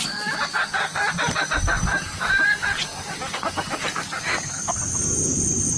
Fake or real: real